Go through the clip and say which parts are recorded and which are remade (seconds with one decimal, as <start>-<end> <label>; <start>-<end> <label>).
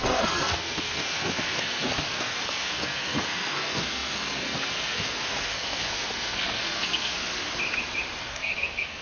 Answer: 0.0-7.3 remade; 7.3-8.2 recorded; 8.2-9.0 remade